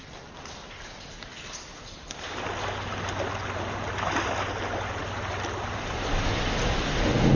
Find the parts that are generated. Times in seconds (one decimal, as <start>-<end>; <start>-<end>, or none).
none